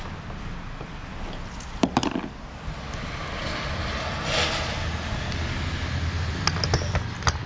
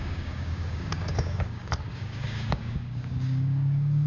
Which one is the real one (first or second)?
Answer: first